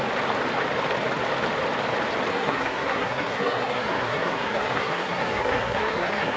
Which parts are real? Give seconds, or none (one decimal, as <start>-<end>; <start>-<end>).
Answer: 0.0-2.3